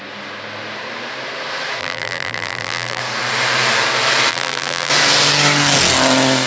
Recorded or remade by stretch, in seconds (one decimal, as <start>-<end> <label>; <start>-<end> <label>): 0.0-1.8 recorded; 1.8-3.0 remade; 3.0-4.3 recorded; 4.3-4.9 remade; 4.9-6.5 recorded